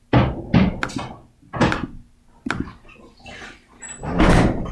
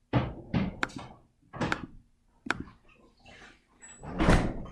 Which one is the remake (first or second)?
second